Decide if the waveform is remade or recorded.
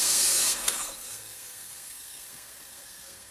remade